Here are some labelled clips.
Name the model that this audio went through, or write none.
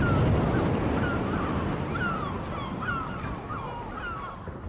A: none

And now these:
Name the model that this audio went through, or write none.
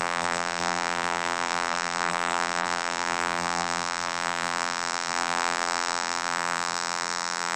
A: vocoder, BigVGAN v2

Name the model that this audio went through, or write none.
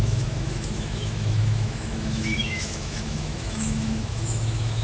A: autoencoder, DAC-VAE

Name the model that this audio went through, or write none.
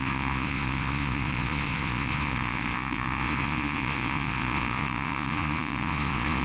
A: vocoder, Vocos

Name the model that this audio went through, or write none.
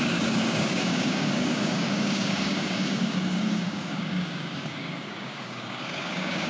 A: codec, DAC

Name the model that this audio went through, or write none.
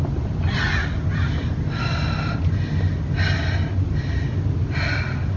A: none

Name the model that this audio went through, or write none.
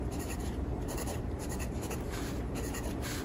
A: vocoder, BigVGAN v2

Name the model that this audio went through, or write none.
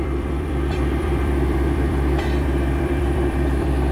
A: vocoder, BigVGAN v2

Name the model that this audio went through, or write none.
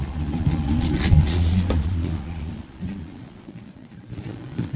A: vocoder, Vocos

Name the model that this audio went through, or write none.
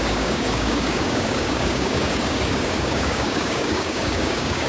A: codec, DAC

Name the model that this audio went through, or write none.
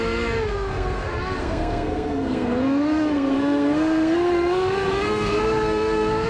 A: codec, SNAC